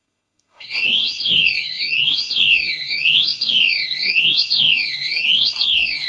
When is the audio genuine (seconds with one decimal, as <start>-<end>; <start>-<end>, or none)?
none